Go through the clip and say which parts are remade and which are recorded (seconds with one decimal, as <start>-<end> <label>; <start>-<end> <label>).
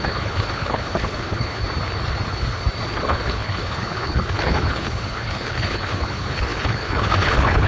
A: 0.0-1.6 remade; 1.6-3.0 recorded; 3.0-7.7 remade